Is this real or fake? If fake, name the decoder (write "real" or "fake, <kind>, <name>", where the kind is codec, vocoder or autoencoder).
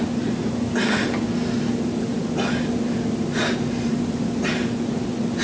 real